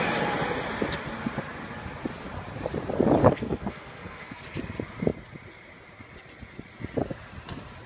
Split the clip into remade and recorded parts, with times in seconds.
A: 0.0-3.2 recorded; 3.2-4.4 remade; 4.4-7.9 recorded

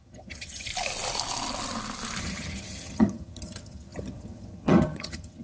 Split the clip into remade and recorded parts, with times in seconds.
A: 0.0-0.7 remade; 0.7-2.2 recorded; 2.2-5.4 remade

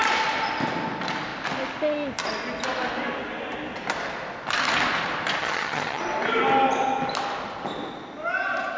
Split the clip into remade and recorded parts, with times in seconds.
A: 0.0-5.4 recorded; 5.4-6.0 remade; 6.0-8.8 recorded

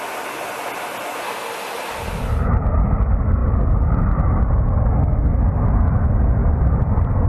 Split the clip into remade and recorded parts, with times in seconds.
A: 0.0-6.4 recorded; 6.4-7.3 remade

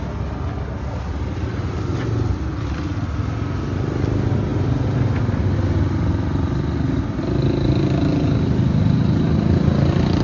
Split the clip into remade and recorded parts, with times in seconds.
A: 0.0-10.2 recorded

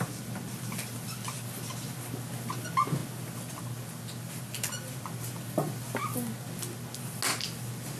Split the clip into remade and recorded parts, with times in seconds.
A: 0.0-8.0 recorded

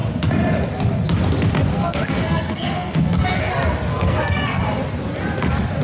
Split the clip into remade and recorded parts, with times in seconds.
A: 0.0-1.7 recorded; 1.7-3.5 remade; 3.5-3.9 recorded; 3.9-4.6 remade; 4.6-5.8 recorded

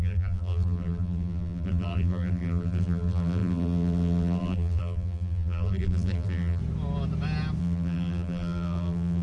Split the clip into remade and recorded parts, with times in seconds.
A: 0.0-6.6 remade; 6.6-7.6 recorded; 7.6-9.2 remade